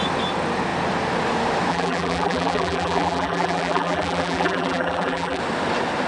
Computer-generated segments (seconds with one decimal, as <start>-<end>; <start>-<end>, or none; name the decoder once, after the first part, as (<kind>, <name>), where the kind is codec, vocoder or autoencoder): 1.7-5.4 (vocoder, BigVGAN v2)